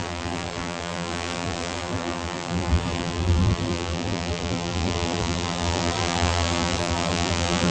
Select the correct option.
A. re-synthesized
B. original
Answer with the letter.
A